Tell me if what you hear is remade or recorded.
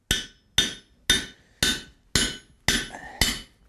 recorded